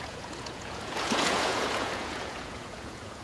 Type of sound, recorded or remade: remade